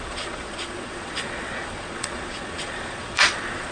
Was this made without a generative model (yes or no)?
no